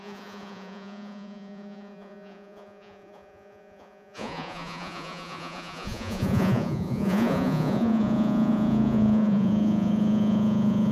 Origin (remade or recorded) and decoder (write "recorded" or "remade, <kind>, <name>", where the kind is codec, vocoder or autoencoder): remade, vocoder, Vocos